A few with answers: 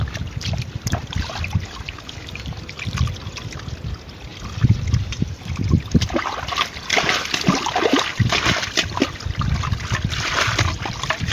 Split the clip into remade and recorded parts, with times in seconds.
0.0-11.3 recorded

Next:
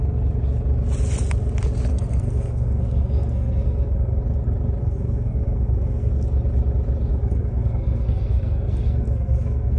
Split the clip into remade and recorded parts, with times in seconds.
0.0-1.9 recorded; 1.9-4.2 remade; 4.2-4.8 recorded; 4.8-6.1 remade; 6.1-7.1 recorded; 7.1-9.8 remade